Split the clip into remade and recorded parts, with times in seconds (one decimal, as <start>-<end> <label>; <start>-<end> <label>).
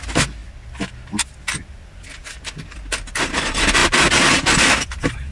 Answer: 0.0-3.8 recorded; 3.8-4.5 remade; 4.5-5.3 recorded